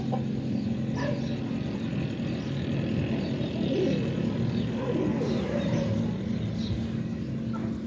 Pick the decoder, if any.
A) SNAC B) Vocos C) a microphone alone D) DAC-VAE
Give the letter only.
C